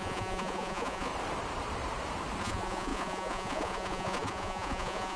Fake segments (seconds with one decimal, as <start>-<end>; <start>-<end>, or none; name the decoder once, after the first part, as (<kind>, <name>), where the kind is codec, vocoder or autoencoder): 0.0-1.1 (vocoder, Vocos); 2.4-5.2